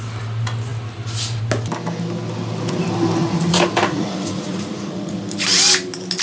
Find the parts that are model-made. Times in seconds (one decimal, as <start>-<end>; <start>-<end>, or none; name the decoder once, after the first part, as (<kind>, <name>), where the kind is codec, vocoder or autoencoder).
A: 3.2-5.2 (vocoder, Vocos)